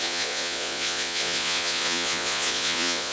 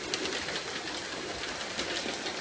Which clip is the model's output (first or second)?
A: first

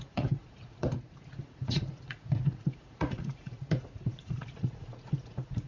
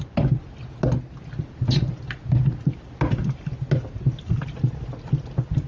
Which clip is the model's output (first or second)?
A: first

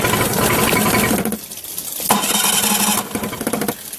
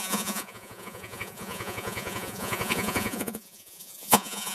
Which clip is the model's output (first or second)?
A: second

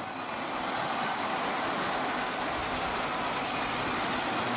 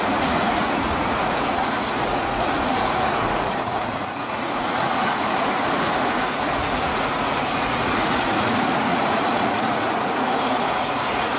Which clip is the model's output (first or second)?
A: second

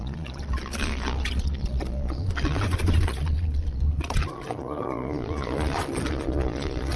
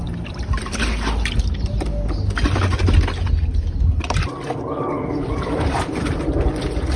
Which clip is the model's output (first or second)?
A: first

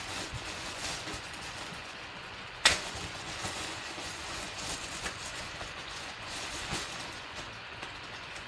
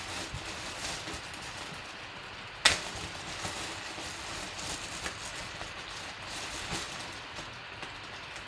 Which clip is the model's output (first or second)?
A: first